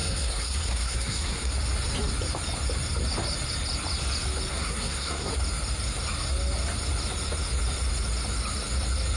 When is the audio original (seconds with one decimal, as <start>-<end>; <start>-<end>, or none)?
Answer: 1.5-4.5; 5.3-9.2